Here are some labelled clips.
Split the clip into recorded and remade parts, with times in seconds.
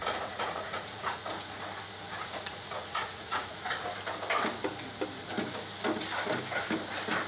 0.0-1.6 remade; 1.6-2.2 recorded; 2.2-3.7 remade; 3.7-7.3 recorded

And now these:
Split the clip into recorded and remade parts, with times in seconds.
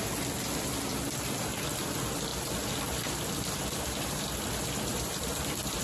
0.0-4.9 recorded; 4.9-5.8 remade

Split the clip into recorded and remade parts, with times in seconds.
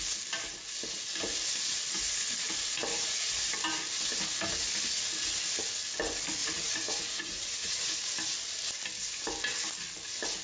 0.0-2.9 recorded; 2.9-3.5 remade; 3.5-6.4 recorded; 6.4-8.0 remade; 8.0-10.4 recorded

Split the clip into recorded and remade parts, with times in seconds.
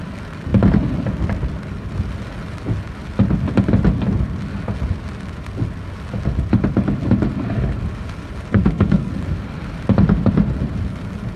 0.0-8.5 recorded; 8.5-9.1 remade; 9.1-11.4 recorded